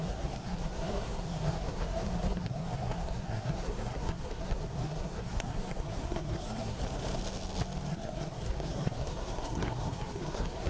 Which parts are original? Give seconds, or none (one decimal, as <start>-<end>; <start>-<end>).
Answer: 6.8-7.9